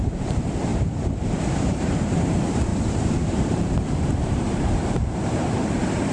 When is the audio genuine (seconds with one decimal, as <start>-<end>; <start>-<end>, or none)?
none